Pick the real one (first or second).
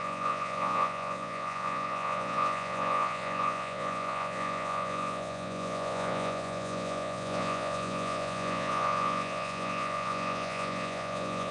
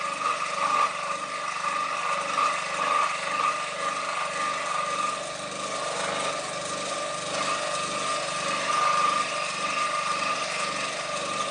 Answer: second